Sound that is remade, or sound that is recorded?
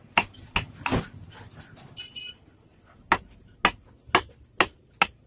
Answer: recorded